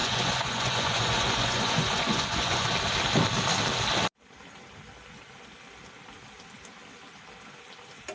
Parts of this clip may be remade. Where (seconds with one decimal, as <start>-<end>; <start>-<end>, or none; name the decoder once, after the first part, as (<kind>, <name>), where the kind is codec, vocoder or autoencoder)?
0.0-2.7 (vocoder, Vocos)